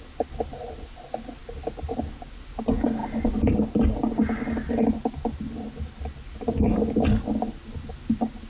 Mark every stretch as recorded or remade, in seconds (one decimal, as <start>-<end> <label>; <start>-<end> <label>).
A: 0.0-8.5 recorded